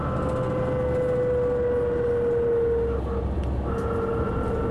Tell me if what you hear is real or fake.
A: real